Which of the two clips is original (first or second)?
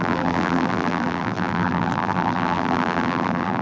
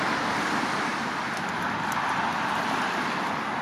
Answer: second